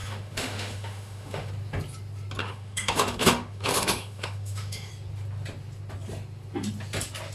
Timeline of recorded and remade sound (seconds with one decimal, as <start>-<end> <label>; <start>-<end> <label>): 0.0-1.5 remade; 1.5-2.4 recorded; 2.4-4.9 remade; 4.9-7.3 recorded